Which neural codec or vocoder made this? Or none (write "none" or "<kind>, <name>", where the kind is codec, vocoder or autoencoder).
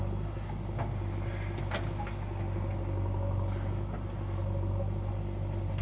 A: none